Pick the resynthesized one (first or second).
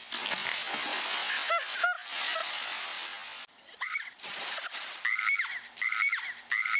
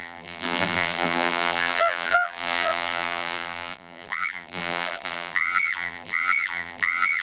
second